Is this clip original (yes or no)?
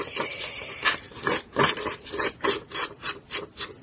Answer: yes